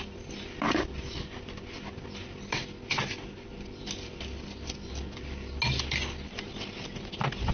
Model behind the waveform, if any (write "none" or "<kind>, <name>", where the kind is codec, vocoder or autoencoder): none